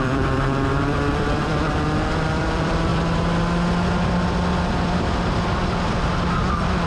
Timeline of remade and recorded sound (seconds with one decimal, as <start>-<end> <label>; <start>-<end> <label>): 0.0-1.5 remade; 1.5-2.4 recorded; 2.4-2.9 remade; 2.9-6.9 recorded